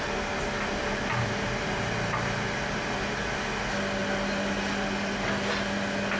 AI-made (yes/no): no